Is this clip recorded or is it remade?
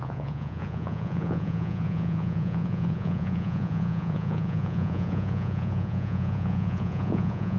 remade